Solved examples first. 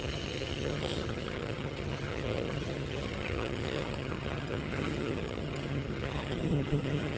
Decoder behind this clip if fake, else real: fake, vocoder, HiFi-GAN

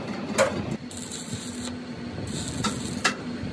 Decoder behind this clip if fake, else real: real